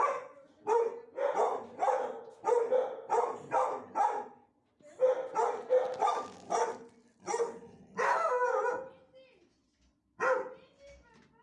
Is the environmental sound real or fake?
real